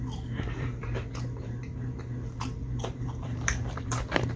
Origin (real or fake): fake